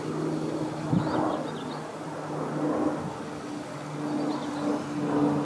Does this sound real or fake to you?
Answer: real